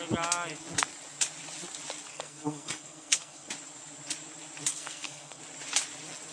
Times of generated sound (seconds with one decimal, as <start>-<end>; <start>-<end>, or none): 2.1-3.5; 4.7-5.4